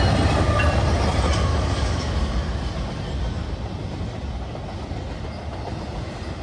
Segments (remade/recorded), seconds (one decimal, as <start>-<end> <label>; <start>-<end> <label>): 0.0-1.5 recorded; 1.5-2.4 remade; 2.4-6.4 recorded